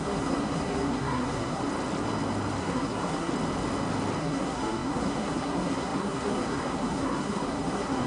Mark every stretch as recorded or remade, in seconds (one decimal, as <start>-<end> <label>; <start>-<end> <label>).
0.0-1.6 remade; 1.6-2.6 recorded; 2.6-3.3 remade; 3.3-4.2 recorded; 4.2-8.1 remade